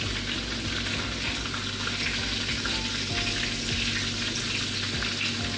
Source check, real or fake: real